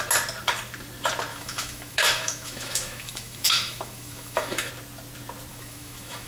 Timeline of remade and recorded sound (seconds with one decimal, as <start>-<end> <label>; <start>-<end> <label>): 0.0-1.3 recorded; 1.3-4.7 remade; 4.7-5.5 recorded; 5.5-6.3 remade